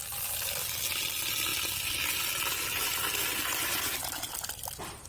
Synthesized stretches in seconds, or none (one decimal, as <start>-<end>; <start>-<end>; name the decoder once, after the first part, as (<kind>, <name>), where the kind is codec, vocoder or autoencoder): none